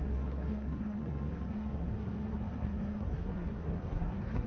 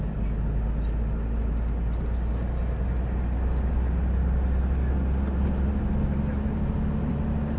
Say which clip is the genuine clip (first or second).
second